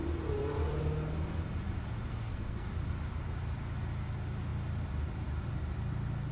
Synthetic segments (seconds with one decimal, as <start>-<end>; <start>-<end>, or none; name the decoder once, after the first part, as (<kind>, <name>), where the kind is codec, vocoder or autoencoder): 2.1-2.7 (codec, SNAC)